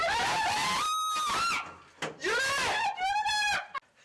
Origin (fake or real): real